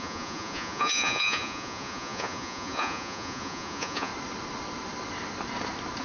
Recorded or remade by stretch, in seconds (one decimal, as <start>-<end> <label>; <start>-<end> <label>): 0.0-4.1 remade; 4.1-6.0 recorded